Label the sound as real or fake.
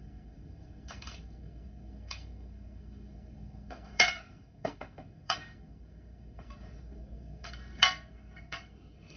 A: fake